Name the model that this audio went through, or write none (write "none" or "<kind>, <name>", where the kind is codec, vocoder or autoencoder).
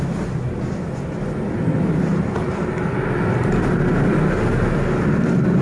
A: none